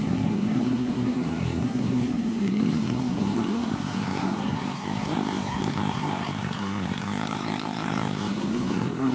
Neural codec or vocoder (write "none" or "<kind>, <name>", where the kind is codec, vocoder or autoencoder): codec, SNAC